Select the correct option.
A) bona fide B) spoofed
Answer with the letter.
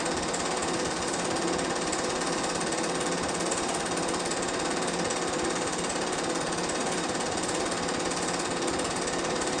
A